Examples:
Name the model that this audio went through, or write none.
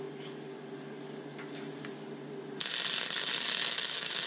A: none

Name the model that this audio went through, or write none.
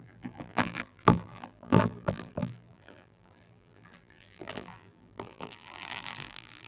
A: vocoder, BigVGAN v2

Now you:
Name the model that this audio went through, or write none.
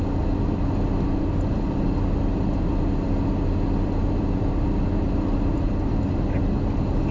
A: none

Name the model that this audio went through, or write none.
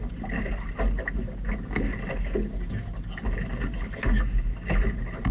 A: none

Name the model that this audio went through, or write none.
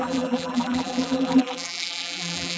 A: vocoder, BigVGAN v2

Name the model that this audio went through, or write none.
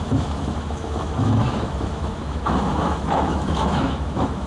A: autoencoder, DAC-VAE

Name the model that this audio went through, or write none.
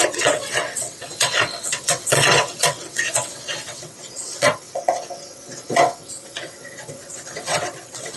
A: vocoder, WaveNeXt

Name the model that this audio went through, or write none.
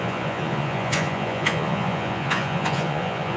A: vocoder, Vocos